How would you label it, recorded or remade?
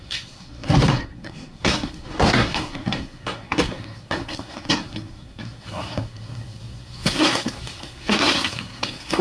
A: remade